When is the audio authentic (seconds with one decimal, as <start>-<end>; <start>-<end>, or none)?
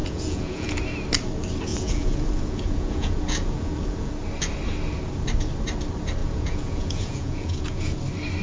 0.8-1.7; 4.1-6.2; 8.0-8.4